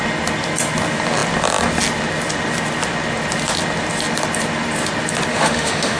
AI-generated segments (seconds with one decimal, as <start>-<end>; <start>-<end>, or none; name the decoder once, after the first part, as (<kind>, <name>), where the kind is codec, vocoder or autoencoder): 5.3-6.0 (autoencoder, DAC-VAE)